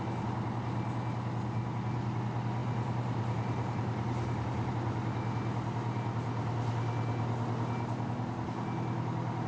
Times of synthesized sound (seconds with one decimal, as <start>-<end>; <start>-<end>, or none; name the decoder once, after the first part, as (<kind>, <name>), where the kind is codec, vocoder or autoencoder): 2.6-4.7 (vocoder, BigVGAN v2)